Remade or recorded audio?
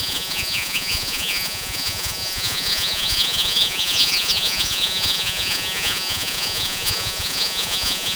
remade